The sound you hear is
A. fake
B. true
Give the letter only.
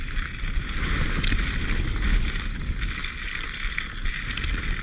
B